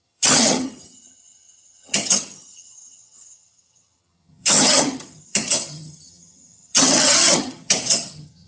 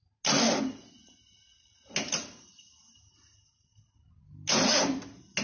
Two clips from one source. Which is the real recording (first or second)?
second